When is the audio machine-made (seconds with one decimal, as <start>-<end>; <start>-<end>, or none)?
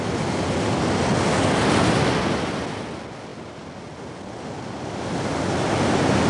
none